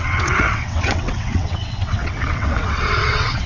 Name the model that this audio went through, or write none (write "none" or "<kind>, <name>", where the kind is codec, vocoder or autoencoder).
vocoder, WaveNeXt